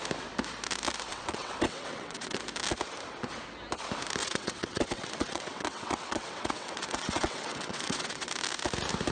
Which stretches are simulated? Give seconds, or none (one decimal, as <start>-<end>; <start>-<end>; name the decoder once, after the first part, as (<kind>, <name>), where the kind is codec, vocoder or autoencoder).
1.1-2.4 (vocoder, WaveNeXt); 4.2-8.3